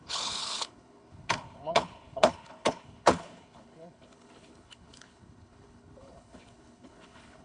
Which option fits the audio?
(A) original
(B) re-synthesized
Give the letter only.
B